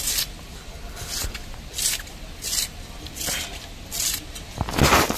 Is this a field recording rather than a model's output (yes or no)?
yes